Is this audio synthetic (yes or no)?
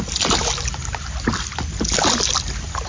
no